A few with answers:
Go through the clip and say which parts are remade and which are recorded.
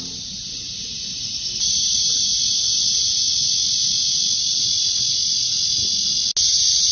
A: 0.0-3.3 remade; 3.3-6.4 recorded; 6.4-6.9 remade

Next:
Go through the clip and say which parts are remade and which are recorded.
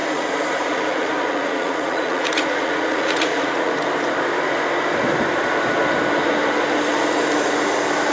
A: 0.0-3.7 remade; 3.7-8.1 recorded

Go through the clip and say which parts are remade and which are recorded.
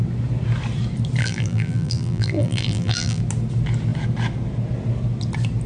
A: 0.0-1.2 recorded; 1.2-3.2 remade; 3.2-5.7 recorded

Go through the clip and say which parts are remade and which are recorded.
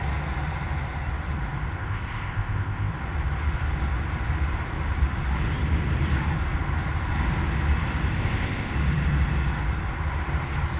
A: 0.0-1.8 recorded; 1.8-2.9 remade; 2.9-8.2 recorded; 8.2-8.7 remade; 8.7-10.8 recorded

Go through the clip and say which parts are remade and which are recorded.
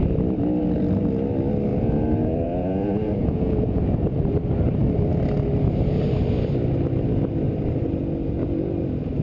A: 0.0-1.7 recorded; 1.7-4.2 remade; 4.2-9.2 recorded